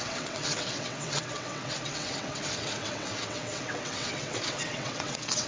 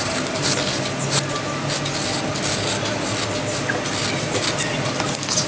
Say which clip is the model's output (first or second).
first